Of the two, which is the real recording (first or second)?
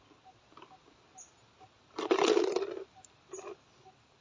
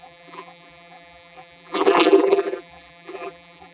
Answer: first